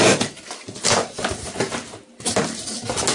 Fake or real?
real